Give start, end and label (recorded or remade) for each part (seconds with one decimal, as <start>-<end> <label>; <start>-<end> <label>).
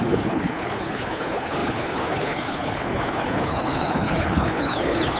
0.0-5.2 remade